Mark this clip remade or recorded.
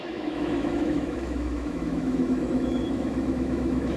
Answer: remade